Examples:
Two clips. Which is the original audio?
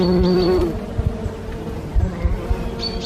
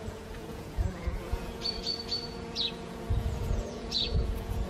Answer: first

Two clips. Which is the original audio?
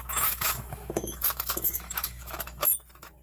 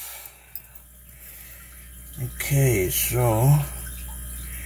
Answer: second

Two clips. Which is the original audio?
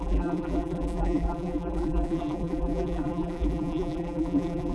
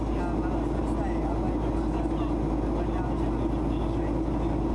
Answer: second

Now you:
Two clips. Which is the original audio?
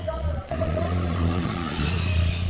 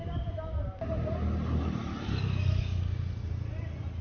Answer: second